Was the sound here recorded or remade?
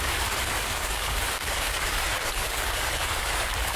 remade